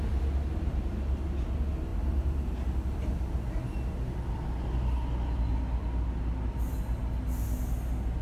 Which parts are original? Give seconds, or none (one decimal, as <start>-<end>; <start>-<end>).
0.0-8.2